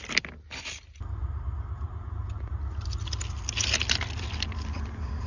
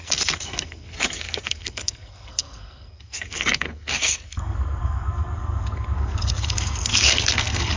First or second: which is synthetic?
second